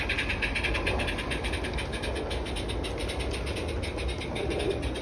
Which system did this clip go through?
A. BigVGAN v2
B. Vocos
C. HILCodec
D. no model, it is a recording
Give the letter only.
D